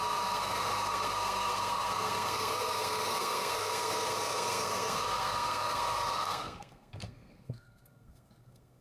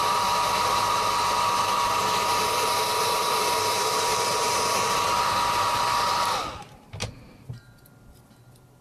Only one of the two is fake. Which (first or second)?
first